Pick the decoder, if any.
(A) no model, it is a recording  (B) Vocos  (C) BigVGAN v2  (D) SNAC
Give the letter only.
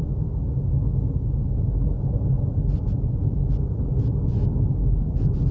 A